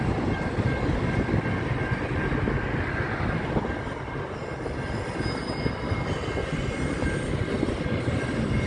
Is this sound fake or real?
real